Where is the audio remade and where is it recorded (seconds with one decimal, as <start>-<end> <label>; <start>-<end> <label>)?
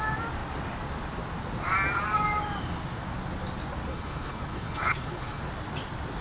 0.0-3.9 recorded; 3.9-5.4 remade; 5.4-6.2 recorded